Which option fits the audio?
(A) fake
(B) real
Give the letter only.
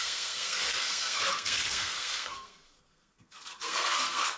A